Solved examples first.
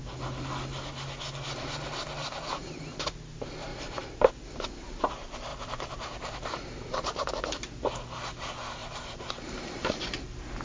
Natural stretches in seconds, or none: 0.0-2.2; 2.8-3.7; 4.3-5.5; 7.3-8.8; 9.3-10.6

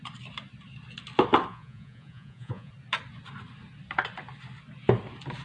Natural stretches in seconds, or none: 0.0-1.5; 2.7-5.4